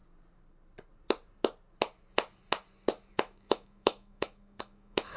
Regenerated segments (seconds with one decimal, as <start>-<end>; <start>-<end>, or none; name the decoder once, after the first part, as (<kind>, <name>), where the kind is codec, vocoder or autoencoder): 3.1-5.2 (autoencoder, DAC-VAE)